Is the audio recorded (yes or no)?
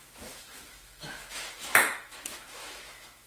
no